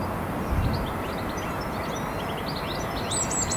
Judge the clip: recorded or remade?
recorded